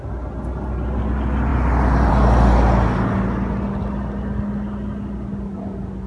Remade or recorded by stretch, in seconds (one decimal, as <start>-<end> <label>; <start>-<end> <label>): 0.0-6.1 recorded